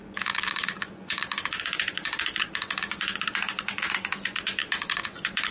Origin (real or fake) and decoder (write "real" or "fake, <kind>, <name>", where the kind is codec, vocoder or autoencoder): fake, vocoder, Vocos